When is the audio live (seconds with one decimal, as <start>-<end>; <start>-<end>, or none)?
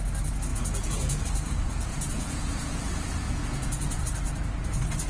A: 0.0-0.5; 1.2-1.9; 4.0-5.1